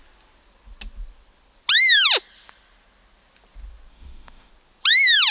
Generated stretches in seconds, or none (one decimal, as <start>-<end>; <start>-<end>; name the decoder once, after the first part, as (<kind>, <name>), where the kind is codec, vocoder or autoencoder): 3.9-4.5 (autoencoder, DAC-VAE)